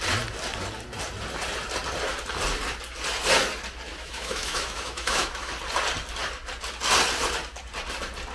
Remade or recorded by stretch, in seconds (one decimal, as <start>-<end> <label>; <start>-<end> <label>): 0.0-3.9 recorded; 3.9-5.5 remade; 5.5-8.3 recorded